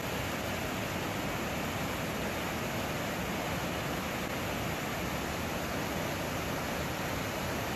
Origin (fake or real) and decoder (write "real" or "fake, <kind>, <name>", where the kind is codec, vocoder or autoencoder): real